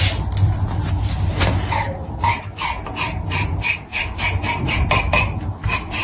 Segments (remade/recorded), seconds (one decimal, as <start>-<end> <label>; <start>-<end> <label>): 0.0-6.0 recorded